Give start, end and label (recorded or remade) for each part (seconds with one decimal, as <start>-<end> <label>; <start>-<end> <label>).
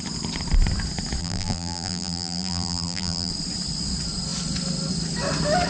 0.0-1.2 recorded; 1.2-3.3 remade; 3.3-5.7 recorded